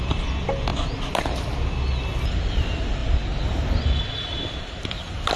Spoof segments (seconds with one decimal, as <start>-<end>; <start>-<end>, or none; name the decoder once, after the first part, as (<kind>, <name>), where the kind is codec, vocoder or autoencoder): none